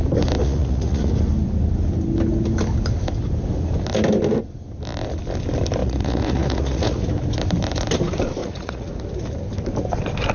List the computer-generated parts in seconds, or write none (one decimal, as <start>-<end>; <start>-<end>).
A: 0.4-1.1; 5.8-7.1; 8.4-8.9